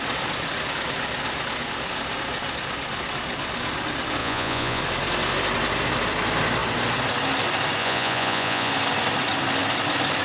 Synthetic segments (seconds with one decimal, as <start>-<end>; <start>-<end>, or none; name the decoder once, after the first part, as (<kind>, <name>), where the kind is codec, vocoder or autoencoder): 4.2-4.8 (vocoder, Vocos); 7.8-8.7

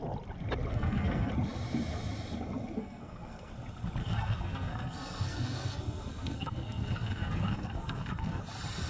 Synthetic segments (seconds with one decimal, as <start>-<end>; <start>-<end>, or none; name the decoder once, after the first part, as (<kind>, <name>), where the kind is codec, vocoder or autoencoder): 0.7-1.3 (codec, SNAC); 2.8-3.5; 4.0-8.4

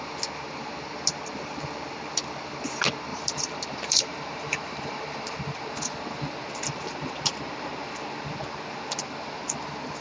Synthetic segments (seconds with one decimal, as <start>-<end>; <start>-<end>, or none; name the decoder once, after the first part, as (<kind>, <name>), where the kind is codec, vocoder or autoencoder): 3.1-5.4 (vocoder, BigVGAN v2)